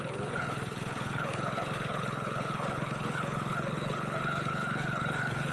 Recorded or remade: remade